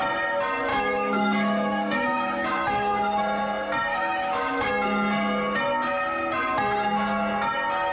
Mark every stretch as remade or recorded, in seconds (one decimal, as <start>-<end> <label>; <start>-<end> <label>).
0.0-0.7 recorded; 0.7-3.2 remade; 3.2-3.9 recorded; 3.9-4.7 remade; 4.7-7.9 recorded